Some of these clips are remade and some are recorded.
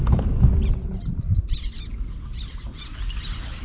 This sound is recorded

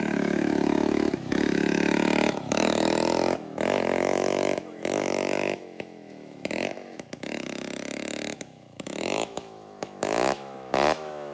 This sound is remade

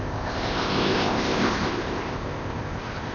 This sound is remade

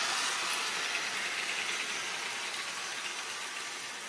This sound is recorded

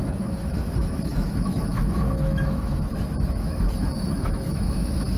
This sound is remade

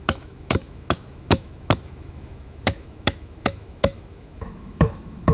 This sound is remade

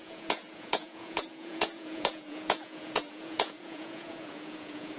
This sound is remade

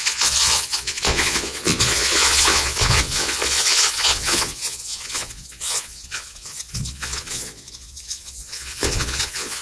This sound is remade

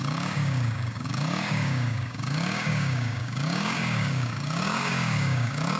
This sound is remade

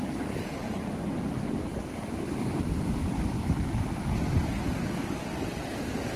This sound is recorded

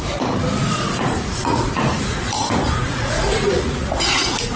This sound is remade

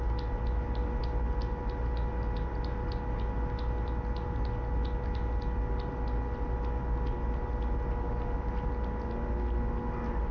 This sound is recorded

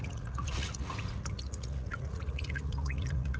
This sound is remade